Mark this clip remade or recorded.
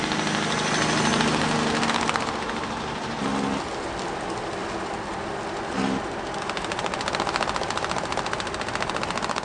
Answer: recorded